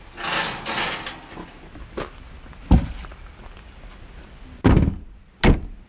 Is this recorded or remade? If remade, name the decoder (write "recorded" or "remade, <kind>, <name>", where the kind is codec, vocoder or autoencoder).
recorded